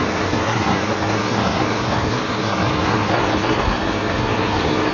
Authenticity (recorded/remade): remade